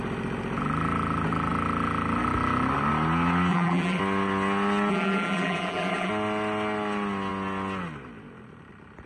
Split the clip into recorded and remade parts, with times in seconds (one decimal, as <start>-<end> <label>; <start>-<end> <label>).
0.0-3.5 recorded; 3.5-4.0 remade; 4.0-4.9 recorded; 4.9-6.1 remade; 6.1-9.1 recorded